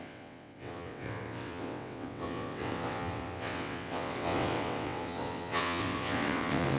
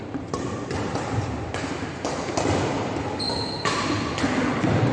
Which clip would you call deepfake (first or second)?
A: first